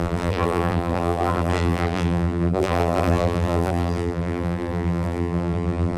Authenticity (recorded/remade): remade